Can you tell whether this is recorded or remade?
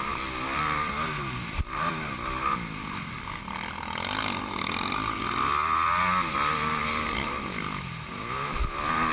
recorded